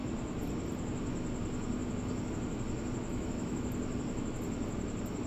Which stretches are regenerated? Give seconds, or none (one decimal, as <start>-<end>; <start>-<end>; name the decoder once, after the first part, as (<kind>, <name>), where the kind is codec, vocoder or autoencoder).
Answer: 3.1-3.7 (autoencoder, DAC-VAE)